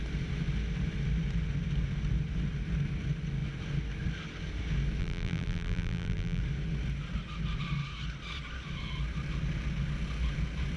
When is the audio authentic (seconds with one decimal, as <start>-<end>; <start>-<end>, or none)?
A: 0.0-5.0; 6.4-10.8

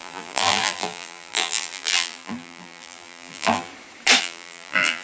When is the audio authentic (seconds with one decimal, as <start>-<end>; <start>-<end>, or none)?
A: 3.7-4.2

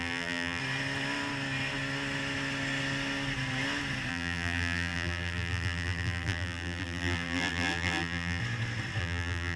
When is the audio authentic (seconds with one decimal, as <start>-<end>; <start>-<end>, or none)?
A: 0.6-4.1; 8.4-9.0

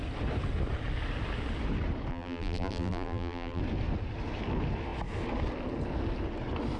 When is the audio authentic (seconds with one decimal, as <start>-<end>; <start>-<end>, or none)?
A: 0.0-2.1; 3.6-6.8